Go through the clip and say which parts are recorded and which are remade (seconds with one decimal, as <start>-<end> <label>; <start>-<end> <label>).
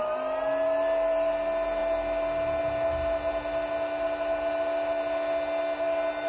0.0-6.3 recorded